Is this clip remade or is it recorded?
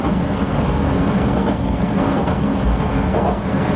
remade